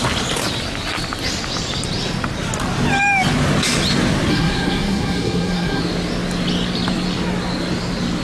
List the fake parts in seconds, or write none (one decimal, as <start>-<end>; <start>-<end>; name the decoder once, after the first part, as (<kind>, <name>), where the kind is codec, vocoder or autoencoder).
4.3-5.8 (codec, SNAC)